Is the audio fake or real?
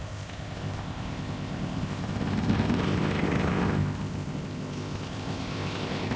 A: fake